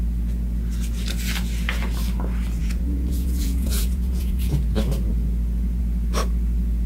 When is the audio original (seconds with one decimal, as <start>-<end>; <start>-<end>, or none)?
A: 0.0-2.6; 4.6-6.9